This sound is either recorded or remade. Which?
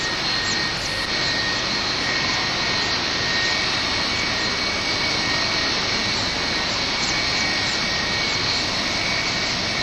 recorded